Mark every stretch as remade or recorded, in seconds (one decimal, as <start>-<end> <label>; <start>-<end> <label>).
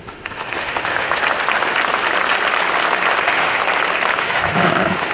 0.0-1.2 remade; 1.2-3.2 recorded; 3.2-3.6 remade; 3.6-4.2 recorded; 4.2-5.1 remade